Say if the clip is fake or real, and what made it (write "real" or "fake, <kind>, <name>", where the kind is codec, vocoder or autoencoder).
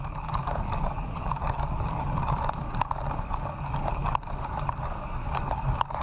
fake, codec, DAC